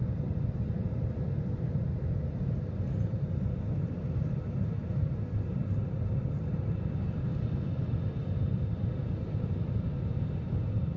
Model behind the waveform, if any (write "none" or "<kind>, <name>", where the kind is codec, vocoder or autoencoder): none